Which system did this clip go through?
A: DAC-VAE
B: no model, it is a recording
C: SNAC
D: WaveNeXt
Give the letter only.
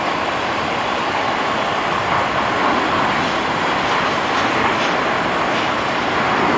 B